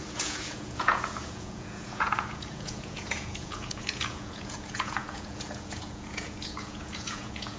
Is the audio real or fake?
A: fake